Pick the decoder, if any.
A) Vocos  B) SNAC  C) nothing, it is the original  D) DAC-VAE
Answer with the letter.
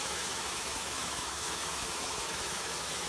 D